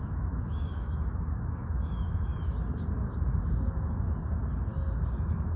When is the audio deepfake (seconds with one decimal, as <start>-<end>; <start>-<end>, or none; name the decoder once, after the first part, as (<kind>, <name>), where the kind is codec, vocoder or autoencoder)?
0.0-2.3 (autoencoder, DAC-VAE)